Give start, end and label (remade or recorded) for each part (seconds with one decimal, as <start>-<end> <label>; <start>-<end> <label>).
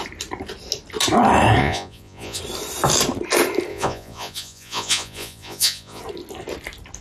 0.0-1.6 recorded; 1.6-2.4 remade; 2.4-3.7 recorded; 3.7-6.0 remade; 6.0-7.0 recorded